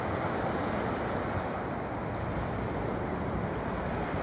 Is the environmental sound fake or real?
real